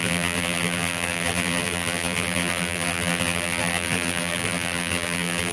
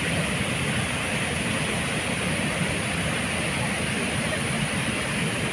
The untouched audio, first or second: second